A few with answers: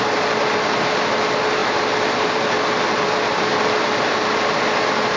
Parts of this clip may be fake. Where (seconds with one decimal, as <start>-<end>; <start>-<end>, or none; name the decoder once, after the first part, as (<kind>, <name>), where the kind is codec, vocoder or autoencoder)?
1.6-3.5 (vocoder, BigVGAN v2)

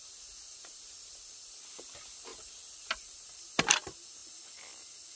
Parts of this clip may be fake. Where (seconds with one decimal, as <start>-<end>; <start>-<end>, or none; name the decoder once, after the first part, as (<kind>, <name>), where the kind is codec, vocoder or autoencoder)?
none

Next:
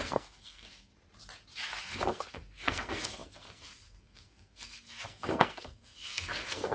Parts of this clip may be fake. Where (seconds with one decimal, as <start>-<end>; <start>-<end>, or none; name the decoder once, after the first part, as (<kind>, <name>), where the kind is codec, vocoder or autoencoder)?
0.0-0.9 (codec, SNAC); 1.8-6.7

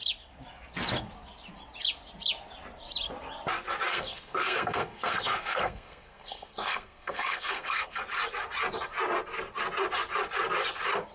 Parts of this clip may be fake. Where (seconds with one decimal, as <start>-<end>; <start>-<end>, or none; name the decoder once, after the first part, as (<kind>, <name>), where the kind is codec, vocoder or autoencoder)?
3.9-8.0 (codec, SNAC)